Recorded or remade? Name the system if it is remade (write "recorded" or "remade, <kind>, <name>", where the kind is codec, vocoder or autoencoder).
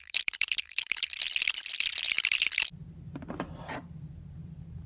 remade, vocoder, BigVGAN v2